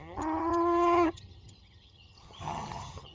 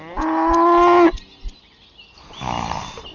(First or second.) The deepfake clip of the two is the first